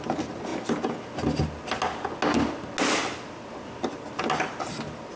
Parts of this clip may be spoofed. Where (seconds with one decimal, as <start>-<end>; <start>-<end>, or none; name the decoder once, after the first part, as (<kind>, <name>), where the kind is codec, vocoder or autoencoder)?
none